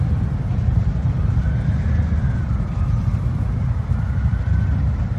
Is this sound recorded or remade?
recorded